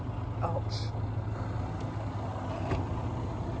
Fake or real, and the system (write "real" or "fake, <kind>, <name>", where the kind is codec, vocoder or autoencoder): real